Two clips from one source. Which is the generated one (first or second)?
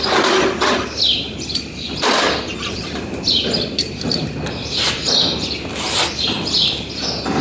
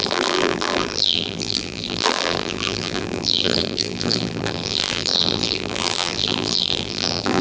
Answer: second